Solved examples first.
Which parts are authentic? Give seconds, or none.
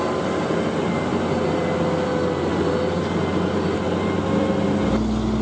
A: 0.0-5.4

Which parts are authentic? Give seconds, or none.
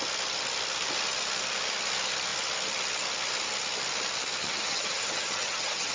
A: 0.0-4.4